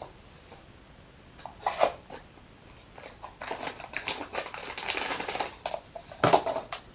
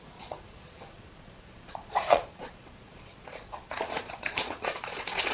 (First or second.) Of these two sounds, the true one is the first